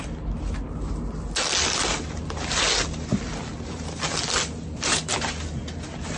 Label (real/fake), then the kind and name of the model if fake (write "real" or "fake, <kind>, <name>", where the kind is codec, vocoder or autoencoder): real